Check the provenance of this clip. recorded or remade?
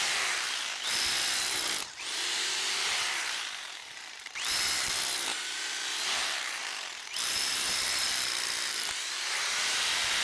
remade